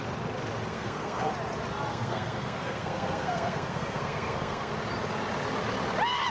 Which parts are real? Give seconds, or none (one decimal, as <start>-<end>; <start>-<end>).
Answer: 0.0-0.7; 1.3-1.9; 4.7-6.3

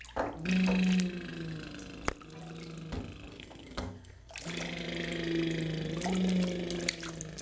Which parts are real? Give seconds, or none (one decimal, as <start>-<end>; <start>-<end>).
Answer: 0.0-3.3; 4.3-7.4